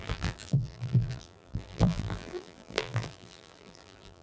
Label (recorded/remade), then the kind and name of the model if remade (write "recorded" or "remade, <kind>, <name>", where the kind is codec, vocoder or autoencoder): remade, vocoder, BigVGAN v2